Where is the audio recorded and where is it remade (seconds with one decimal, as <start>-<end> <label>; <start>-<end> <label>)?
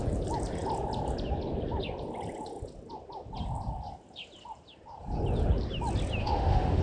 0.0-6.2 recorded; 6.2-6.8 remade